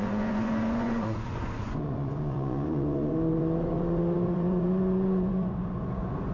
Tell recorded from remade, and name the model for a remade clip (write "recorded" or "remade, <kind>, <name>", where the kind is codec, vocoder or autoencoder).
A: remade, vocoder, Vocos